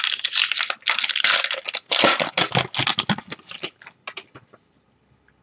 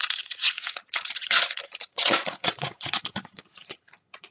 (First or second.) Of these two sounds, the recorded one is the first